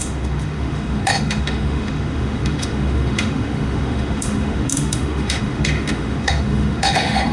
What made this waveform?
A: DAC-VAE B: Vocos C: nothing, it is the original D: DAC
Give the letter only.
A